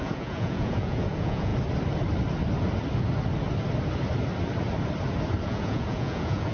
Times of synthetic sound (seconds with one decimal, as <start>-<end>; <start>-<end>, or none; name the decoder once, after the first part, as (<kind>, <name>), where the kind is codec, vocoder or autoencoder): 0.0-1.5 (vocoder, Vocos); 5.4-6.5